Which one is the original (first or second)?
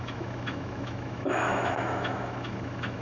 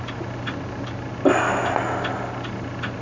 second